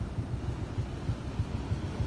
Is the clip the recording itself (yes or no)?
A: yes